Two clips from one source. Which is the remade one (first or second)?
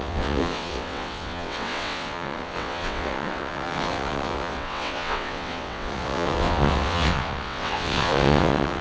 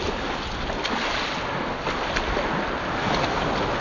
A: first